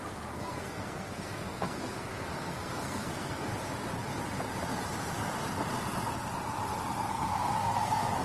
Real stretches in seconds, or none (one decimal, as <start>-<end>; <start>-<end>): 3.5-7.1